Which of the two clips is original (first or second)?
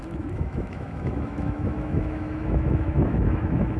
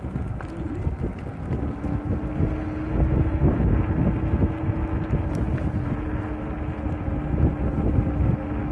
second